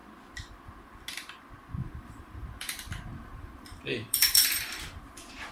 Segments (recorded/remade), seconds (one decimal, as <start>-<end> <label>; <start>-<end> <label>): 0.0-1.8 recorded; 1.8-5.1 remade; 5.1-5.5 recorded